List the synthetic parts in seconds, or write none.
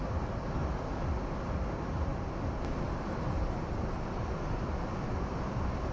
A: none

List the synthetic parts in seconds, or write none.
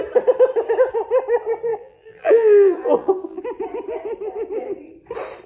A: 1.7-3.4 (vocoder, BigVGAN v2)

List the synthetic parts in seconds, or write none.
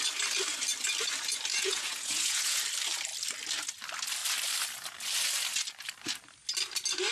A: 1.5-2.6 (vocoder, Vocos)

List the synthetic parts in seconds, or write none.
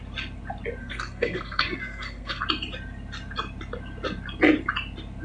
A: 0.8-2.4 (codec, SNAC)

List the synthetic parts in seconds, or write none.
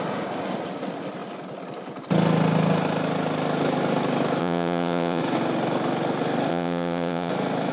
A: 4.4-5.2 (vocoder, Vocos); 6.5-7.3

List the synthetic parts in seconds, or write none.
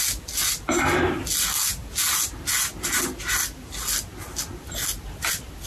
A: none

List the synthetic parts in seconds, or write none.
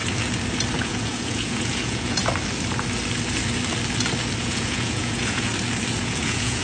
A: 0.8-2.2 (vocoder, Vocos); 4.4-5.5; 6.0-6.6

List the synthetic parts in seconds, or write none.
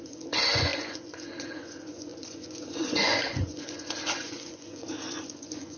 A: 0.0-5.8 (vocoder, Vocos)